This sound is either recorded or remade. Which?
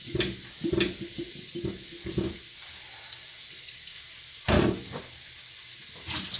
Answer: recorded